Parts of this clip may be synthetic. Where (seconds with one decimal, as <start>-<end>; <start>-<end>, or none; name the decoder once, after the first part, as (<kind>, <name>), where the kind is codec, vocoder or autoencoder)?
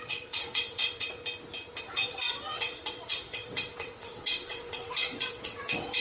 0.0-1.2 (vocoder, WaveNeXt); 1.8-6.0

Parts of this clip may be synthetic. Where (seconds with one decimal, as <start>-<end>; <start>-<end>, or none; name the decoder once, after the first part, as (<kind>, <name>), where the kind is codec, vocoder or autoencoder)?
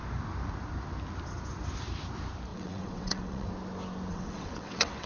2.5-3.5 (vocoder, WaveNeXt); 4.1-5.1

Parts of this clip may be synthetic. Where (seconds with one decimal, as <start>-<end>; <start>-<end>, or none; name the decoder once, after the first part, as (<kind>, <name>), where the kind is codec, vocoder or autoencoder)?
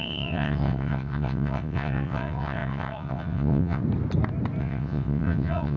0.0-3.8 (vocoder, WaveNeXt); 4.6-5.8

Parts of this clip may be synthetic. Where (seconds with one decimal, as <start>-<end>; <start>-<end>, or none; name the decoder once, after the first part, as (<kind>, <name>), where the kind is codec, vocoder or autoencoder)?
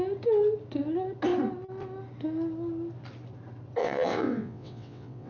3.8-5.3 (vocoder, WaveNeXt)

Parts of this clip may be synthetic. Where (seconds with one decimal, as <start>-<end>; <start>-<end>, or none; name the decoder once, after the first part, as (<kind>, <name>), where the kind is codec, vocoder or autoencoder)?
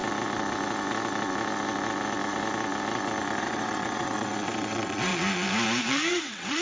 3.4-5.1 (vocoder, WaveNeXt); 5.8-6.6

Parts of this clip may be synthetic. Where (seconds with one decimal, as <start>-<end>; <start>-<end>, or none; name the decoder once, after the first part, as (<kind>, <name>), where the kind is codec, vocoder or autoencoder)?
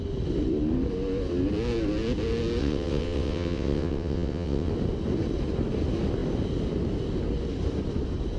2.6-4.7 (vocoder, WaveNeXt)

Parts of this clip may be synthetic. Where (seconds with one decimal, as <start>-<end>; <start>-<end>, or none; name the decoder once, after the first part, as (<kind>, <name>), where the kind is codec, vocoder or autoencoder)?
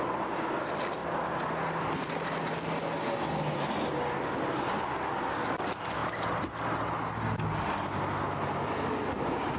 none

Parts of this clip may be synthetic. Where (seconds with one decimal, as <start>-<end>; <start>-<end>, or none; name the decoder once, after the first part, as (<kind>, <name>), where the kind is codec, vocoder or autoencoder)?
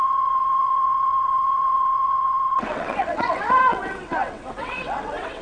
0.0-5.4 (vocoder, WaveNeXt)